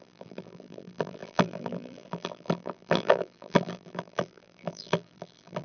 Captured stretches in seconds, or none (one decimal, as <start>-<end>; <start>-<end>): none